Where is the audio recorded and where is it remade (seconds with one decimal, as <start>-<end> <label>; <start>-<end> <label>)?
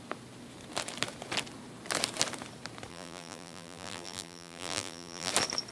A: 0.0-2.9 recorded; 2.9-5.3 remade; 5.3-5.7 recorded